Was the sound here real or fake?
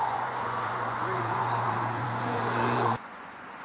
fake